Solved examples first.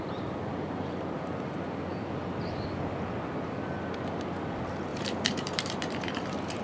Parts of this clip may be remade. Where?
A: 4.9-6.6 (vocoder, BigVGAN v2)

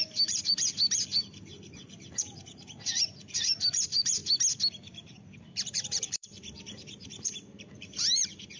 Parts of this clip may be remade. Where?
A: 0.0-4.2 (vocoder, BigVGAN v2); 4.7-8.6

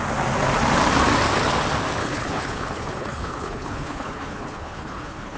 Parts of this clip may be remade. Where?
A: 2.0-5.4 (codec, HILCodec)

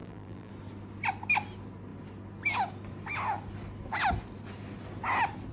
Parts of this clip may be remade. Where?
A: 0.0-0.5 (vocoder, BigVGAN v2)